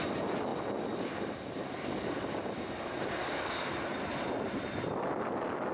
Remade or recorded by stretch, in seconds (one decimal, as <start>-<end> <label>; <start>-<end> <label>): 0.0-3.2 recorded; 3.2-3.7 remade; 3.7-5.7 recorded